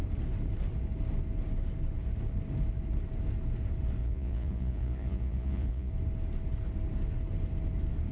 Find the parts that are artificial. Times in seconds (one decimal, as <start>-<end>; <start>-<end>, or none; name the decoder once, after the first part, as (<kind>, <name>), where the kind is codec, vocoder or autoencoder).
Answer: 4.0-5.9 (vocoder, Vocos)